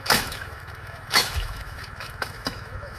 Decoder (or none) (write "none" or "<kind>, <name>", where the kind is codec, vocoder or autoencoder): autoencoder, DAC-VAE